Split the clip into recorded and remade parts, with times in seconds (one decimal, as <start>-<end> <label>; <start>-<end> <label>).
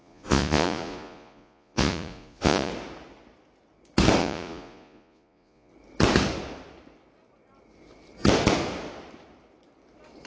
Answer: 0.0-2.7 remade; 2.7-4.2 recorded; 4.2-5.7 remade; 5.7-10.3 recorded